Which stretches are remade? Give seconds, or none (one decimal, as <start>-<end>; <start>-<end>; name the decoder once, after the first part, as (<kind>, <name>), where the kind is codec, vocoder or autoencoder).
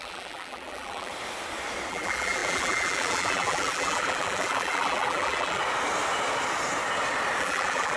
0.0-1.1 (vocoder, BigVGAN v2); 1.9-5.6; 7.4-8.0